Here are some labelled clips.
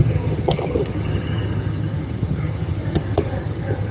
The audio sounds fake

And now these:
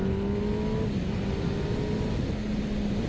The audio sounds real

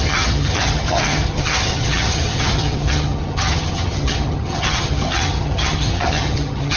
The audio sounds fake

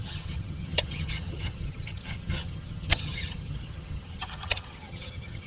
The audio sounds fake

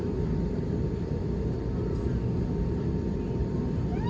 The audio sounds real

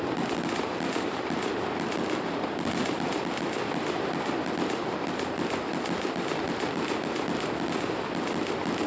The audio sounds real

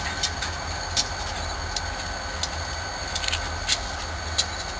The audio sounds real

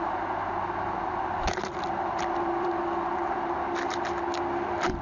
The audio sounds real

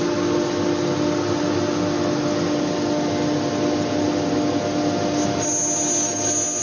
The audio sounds real